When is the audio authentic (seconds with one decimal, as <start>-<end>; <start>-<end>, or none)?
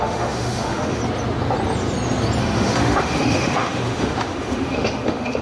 1.0-2.4